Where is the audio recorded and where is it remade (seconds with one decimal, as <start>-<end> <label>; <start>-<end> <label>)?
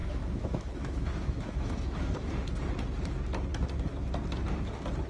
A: 0.0-2.3 remade; 2.3-5.1 recorded